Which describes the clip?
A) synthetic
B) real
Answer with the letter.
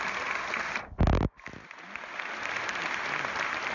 B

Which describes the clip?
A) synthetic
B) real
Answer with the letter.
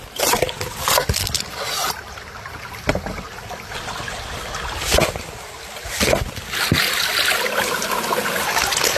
B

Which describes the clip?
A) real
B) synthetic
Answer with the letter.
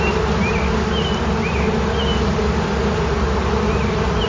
A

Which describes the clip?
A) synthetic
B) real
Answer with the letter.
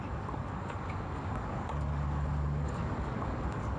A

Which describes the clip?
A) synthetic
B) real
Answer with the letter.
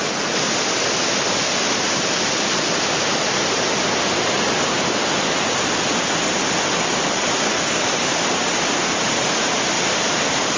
B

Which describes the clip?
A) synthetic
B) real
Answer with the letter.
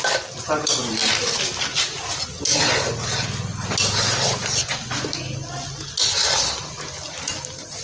B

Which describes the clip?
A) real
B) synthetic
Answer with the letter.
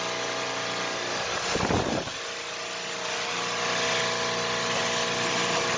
A